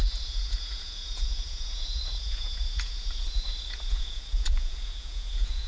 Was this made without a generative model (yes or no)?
no